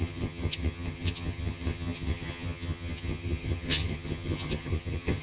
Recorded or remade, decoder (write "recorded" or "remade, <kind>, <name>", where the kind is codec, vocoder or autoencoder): remade, vocoder, HiFi-GAN